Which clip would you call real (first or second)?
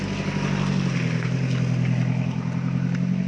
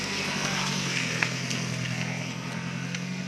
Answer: first